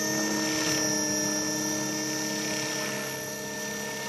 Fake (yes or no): no